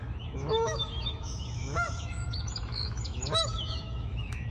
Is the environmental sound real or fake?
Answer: fake